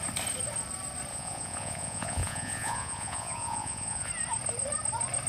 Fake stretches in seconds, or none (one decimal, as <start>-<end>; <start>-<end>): 1.1-4.1